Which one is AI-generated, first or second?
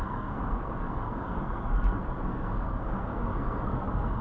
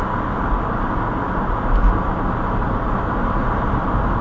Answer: first